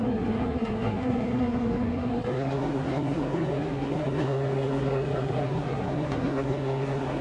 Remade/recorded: remade